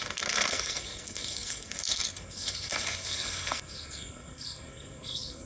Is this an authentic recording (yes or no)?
no